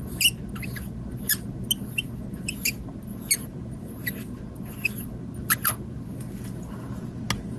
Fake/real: real